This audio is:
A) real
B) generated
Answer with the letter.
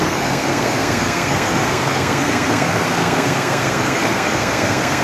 B